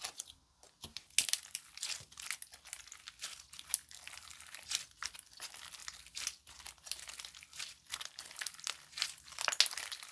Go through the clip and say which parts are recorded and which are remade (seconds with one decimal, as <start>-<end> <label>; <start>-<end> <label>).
0.0-10.1 recorded